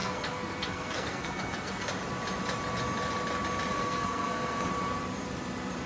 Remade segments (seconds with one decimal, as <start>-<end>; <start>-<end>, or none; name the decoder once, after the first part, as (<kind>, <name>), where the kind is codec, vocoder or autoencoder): 0.0-1.9 (codec, SNAC); 3.7-4.7